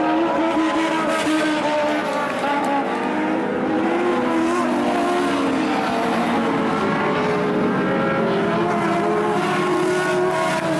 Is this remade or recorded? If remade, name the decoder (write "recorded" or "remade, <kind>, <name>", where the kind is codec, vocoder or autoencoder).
recorded